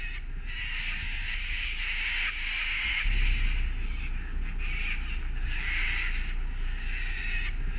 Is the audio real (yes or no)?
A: yes